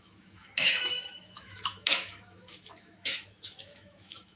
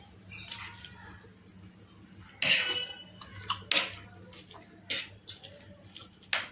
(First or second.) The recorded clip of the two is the second